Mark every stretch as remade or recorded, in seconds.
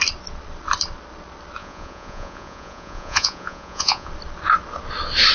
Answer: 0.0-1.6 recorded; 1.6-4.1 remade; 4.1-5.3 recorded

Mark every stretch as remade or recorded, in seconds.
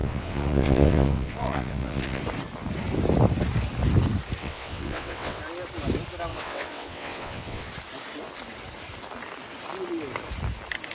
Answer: 0.0-2.2 remade; 2.2-4.4 recorded; 4.4-5.4 remade; 5.4-6.3 recorded; 6.3-7.7 remade; 7.7-10.9 recorded